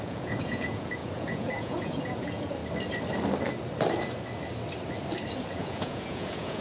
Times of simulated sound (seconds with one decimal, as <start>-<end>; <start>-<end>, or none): 0.0-2.6; 5.3-6.6